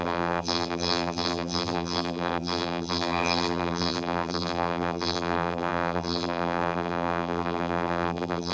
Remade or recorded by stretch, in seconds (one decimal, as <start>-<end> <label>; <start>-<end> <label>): 0.0-8.5 remade